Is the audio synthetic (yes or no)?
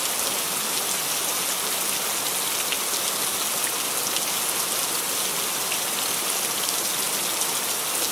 no